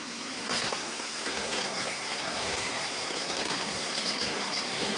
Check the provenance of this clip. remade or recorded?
remade